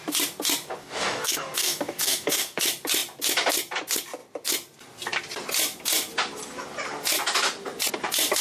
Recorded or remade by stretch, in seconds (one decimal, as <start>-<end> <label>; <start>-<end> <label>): 0.0-0.8 recorded; 0.8-2.6 remade; 2.6-8.4 recorded

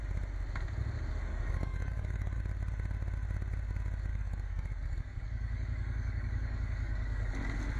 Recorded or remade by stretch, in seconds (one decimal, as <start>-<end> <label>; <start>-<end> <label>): 0.0-1.3 recorded; 1.3-2.4 remade; 2.4-4.1 recorded; 4.1-7.3 remade; 7.3-7.8 recorded

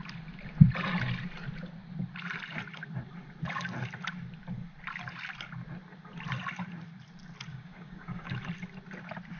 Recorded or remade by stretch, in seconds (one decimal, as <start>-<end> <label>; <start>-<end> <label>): 0.0-7.5 recorded; 7.5-8.3 remade; 8.3-9.4 recorded

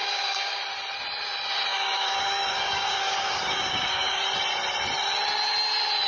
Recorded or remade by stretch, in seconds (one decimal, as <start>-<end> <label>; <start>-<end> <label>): 0.0-0.6 remade; 0.6-1.7 recorded; 1.7-4.2 remade; 4.2-6.1 recorded

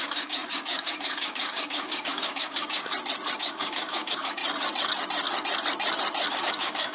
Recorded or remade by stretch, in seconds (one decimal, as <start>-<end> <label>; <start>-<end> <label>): 0.0-2.9 remade; 2.9-3.4 recorded; 3.4-4.4 remade; 4.4-6.3 recorded; 6.3-6.9 remade